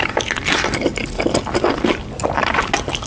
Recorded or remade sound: recorded